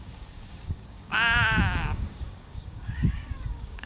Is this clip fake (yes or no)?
yes